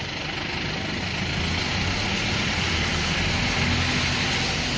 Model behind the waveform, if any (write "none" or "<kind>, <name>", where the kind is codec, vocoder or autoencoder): none